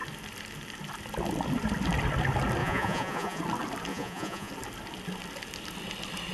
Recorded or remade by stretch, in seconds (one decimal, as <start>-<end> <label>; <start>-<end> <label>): 0.0-2.6 recorded; 2.6-3.4 remade; 3.4-3.9 recorded; 3.9-4.5 remade; 4.5-6.3 recorded